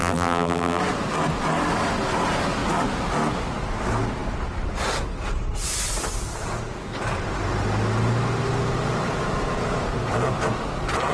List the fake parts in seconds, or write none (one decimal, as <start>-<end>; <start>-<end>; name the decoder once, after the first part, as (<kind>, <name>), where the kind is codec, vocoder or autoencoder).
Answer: 0.0-0.8 (vocoder, BigVGAN v2)